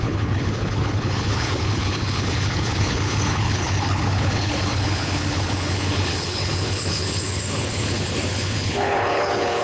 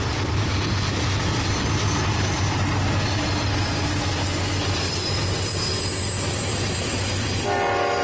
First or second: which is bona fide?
second